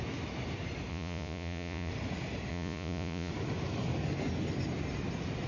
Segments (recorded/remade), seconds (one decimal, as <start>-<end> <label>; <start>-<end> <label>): 0.0-0.9 recorded; 0.9-1.9 remade; 1.9-2.5 recorded; 2.5-3.3 remade; 3.3-5.5 recorded